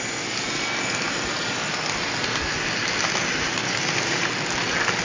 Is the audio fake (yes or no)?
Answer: no